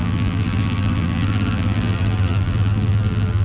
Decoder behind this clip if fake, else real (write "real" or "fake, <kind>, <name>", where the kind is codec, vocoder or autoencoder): fake, vocoder, BigVGAN v2